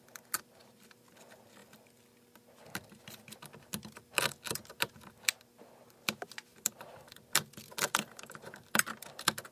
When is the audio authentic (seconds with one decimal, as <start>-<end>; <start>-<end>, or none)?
0.0-6.5; 8.9-9.5